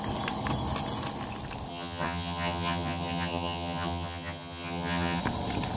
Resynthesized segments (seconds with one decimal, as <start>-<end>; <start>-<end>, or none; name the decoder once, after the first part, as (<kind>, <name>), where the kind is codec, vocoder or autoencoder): 1.7-5.2 (vocoder, HiFi-GAN)